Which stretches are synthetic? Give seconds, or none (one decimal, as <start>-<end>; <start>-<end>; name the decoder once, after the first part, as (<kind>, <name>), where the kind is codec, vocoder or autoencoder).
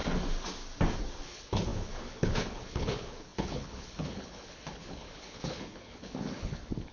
1.2-6.9 (codec, HILCodec)